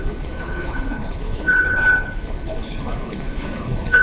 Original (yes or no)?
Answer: no